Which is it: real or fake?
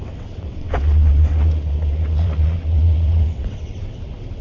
fake